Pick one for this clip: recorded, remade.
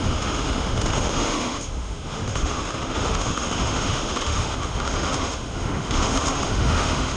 remade